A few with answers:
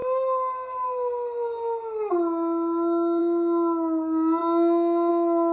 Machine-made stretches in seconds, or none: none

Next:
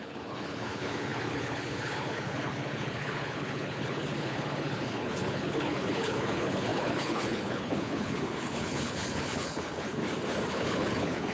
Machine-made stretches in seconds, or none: 0.0-10.0 (codec, HILCodec); 10.5-11.3

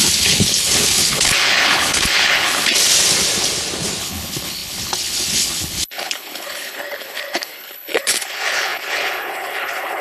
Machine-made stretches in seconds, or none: 0.0-2.7 (codec, HILCodec); 4.0-10.0